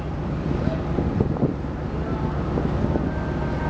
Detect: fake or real real